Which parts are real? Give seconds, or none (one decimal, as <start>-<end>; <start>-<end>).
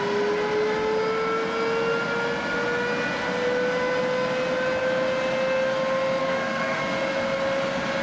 0.0-6.2; 6.8-8.0